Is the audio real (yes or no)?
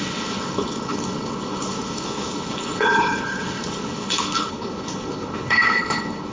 no